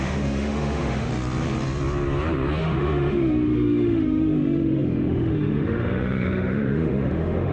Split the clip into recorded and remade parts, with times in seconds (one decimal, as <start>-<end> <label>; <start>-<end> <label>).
0.0-1.1 remade; 1.1-2.6 recorded; 2.6-7.5 remade